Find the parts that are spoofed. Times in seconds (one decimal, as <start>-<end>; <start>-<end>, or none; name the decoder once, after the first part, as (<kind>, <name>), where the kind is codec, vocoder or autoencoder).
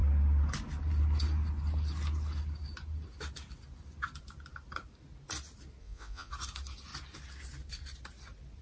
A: 5.8-6.3 (vocoder, Vocos)